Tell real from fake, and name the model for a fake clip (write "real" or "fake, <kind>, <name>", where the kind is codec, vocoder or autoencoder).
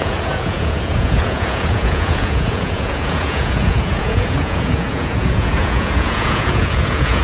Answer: fake, vocoder, Vocos